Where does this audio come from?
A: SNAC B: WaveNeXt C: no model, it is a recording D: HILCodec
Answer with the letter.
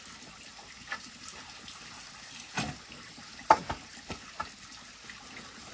C